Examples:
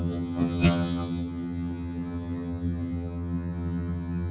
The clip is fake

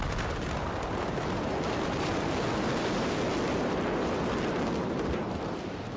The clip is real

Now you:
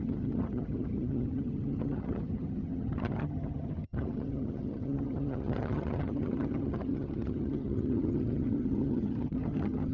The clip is fake